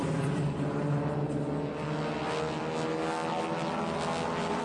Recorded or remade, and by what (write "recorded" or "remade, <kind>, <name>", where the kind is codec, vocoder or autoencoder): recorded